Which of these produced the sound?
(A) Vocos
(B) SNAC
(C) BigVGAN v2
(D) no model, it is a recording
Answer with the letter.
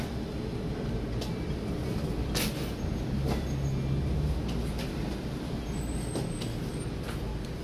D